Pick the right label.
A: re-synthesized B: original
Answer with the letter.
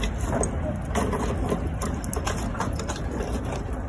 B